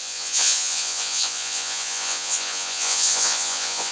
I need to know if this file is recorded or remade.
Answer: remade